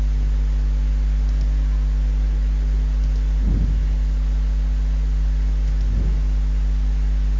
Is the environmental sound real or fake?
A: real